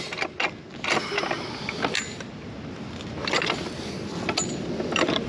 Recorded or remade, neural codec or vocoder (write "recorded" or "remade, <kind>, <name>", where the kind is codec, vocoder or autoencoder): recorded